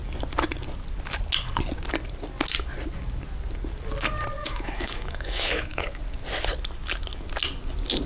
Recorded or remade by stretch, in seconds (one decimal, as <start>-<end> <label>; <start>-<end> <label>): 0.0-4.4 recorded; 4.4-6.0 remade; 6.0-8.1 recorded